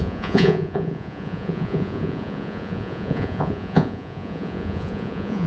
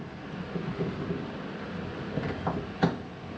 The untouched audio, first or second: second